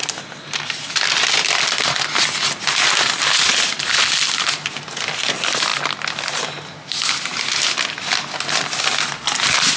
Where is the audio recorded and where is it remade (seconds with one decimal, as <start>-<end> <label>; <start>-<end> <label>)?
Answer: 0.0-9.8 recorded

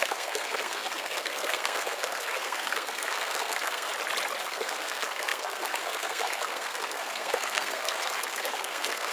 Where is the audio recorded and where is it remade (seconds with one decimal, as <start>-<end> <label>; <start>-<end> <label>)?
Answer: 0.0-3.9 remade; 3.9-4.4 recorded; 4.4-9.1 remade

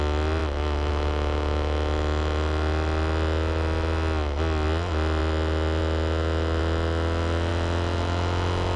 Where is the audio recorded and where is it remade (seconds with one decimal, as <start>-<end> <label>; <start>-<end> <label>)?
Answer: 0.0-8.8 recorded

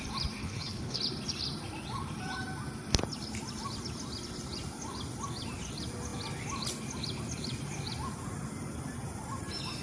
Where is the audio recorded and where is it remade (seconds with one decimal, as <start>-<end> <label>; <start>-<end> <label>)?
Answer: 0.0-0.4 recorded; 0.4-1.0 remade; 1.0-9.8 recorded

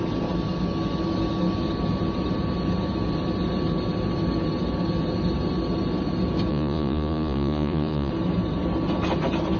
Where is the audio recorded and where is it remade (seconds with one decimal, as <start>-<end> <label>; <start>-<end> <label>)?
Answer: 0.0-6.5 recorded; 6.5-8.1 remade; 8.1-9.6 recorded

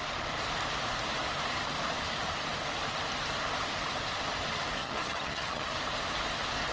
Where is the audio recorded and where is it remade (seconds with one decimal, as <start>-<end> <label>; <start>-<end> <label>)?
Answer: 0.0-4.8 recorded; 4.8-5.7 remade; 5.7-6.7 recorded